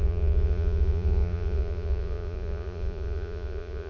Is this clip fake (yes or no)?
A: yes